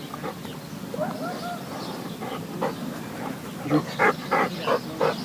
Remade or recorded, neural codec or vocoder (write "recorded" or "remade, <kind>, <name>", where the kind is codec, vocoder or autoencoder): recorded